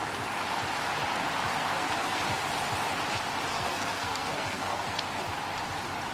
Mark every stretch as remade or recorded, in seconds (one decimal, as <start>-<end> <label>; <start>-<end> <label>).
0.0-1.5 recorded; 1.5-2.2 remade; 2.2-3.5 recorded; 3.5-5.0 remade; 5.0-6.1 recorded